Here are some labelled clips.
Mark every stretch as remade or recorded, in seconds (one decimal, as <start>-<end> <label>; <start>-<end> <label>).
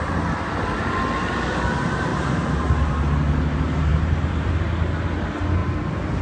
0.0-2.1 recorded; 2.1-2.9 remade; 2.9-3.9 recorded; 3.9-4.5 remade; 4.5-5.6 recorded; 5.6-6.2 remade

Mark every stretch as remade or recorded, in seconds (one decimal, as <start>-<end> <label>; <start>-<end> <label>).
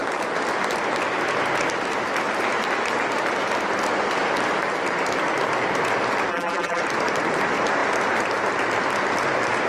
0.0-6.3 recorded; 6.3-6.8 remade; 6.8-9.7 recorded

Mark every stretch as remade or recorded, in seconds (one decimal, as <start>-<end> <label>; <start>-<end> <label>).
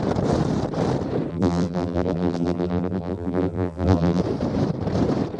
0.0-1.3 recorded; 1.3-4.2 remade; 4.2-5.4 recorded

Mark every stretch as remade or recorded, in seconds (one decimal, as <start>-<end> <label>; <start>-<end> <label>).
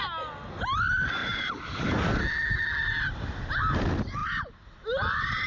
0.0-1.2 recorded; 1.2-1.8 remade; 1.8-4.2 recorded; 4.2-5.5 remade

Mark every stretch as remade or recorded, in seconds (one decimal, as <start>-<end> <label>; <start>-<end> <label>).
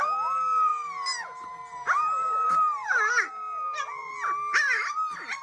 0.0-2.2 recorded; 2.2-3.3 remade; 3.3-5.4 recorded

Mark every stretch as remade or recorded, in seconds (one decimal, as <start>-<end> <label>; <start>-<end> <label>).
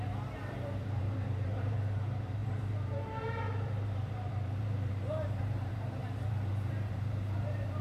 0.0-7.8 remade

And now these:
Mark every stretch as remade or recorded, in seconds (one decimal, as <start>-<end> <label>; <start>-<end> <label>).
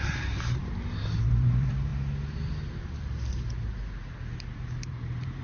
0.0-0.6 remade; 0.6-1.2 recorded; 1.2-1.9 remade; 1.9-4.1 recorded; 4.1-5.4 remade